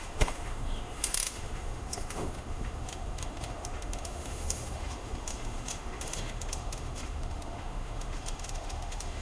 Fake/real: fake